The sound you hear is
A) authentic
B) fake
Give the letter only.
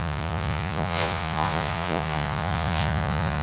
B